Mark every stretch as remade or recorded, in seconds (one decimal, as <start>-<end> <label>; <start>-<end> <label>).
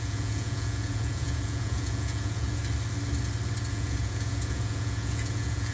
0.0-2.6 remade; 2.6-3.7 recorded; 3.7-5.7 remade